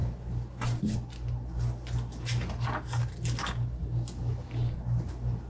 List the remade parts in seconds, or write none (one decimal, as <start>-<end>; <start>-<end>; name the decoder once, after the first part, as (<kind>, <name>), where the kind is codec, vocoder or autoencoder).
none